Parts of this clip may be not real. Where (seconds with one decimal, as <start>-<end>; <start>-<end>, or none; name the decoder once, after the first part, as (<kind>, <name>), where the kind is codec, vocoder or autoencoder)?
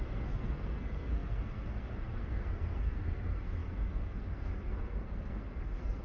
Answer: 0.0-6.0 (codec, SNAC)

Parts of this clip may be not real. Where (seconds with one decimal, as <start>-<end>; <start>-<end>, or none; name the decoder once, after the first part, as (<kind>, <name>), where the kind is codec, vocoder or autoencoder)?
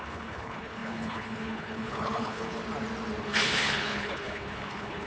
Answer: 0.0-2.6 (codec, HILCodec); 3.2-5.1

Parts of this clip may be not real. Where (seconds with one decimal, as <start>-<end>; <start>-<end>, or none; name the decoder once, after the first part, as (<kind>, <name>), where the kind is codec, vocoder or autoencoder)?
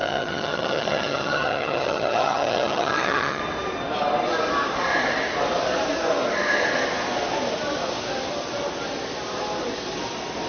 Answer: 0.0-3.4 (vocoder, HiFi-GAN)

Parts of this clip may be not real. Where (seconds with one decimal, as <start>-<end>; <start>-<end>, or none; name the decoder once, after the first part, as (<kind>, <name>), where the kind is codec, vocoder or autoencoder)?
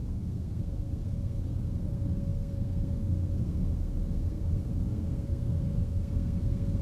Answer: 0.0-6.8 (codec, SNAC)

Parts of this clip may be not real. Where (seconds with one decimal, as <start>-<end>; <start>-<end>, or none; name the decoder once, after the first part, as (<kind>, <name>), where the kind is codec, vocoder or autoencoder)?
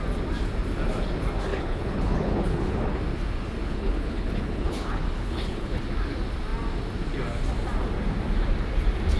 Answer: 1.5-3.0 (codec, HILCodec); 3.6-5.8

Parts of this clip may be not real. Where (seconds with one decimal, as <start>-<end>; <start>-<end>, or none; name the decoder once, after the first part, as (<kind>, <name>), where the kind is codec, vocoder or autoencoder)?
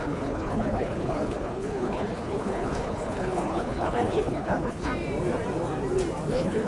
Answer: 0.0-4.9 (codec, HILCodec); 6.3-6.7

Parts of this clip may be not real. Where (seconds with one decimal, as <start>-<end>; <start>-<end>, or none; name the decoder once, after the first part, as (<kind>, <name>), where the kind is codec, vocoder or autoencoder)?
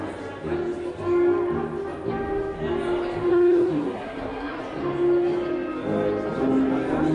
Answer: 3.3-4.6 (codec, SNAC)